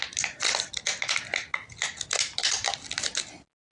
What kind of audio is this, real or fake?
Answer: real